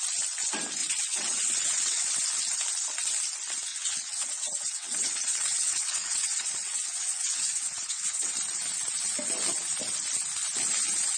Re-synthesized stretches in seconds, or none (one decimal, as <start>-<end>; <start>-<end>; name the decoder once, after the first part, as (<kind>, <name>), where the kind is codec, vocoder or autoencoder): 0.8-2.1 (vocoder, WaveNeXt); 3.7-8.3